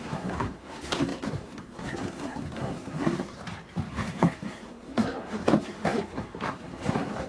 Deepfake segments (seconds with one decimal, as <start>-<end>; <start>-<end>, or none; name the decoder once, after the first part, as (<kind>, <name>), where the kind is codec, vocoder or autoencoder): 0.0-3.4 (codec, SNAC); 3.9-7.3